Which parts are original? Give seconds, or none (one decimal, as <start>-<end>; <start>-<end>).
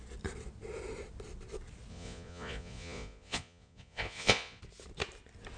0.0-1.9; 4.6-5.6